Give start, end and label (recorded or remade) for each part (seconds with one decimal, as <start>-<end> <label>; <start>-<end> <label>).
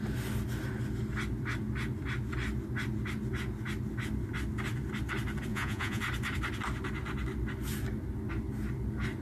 0.0-5.5 recorded; 5.5-6.0 remade; 6.0-9.2 recorded